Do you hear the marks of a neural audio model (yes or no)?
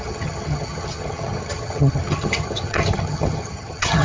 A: yes